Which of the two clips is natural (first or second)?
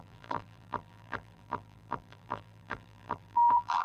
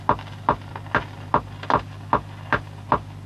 second